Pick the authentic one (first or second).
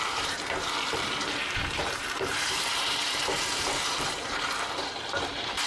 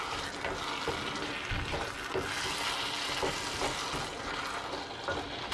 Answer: second